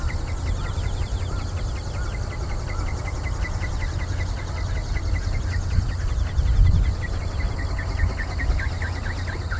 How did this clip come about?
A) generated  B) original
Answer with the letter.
B